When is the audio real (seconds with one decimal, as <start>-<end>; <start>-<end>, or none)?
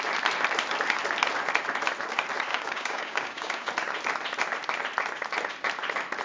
0.0-2.5; 3.7-6.2